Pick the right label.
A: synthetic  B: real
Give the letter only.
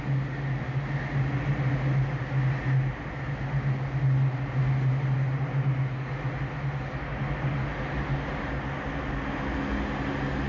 B